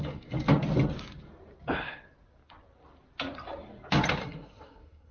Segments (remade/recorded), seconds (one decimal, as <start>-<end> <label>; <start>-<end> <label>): 0.0-4.2 recorded; 4.2-5.1 remade